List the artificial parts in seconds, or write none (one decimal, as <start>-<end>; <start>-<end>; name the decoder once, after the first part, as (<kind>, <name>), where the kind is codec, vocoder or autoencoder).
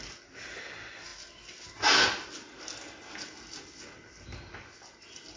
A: none